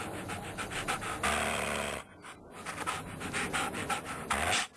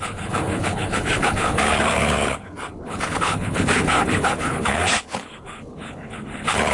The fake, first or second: second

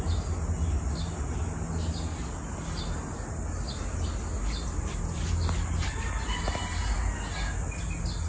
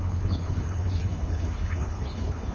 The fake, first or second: second